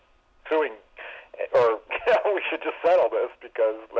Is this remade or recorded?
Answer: recorded